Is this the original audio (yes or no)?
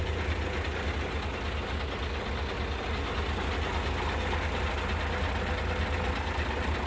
yes